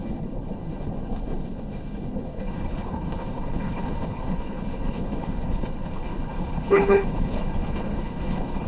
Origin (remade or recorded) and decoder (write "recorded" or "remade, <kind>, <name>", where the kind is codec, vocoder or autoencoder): remade, codec, HILCodec